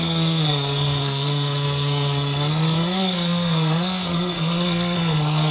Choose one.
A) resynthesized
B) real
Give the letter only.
A